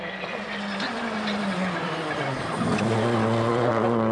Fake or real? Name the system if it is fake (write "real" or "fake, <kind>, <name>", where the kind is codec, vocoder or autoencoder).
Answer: real